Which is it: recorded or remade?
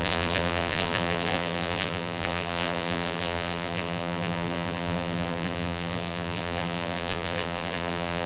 remade